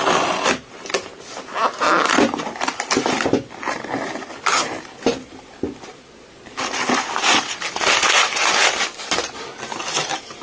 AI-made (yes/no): no